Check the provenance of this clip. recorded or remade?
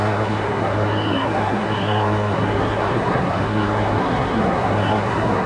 remade